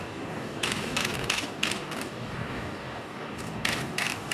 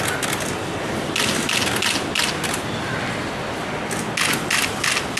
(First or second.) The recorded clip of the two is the second